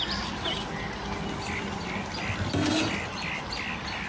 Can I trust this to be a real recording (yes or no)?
yes